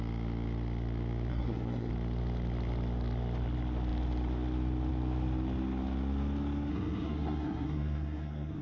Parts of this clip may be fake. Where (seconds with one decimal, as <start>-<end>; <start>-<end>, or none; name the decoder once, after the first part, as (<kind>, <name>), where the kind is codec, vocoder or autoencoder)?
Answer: 1.3-1.9 (codec, SNAC); 6.7-8.6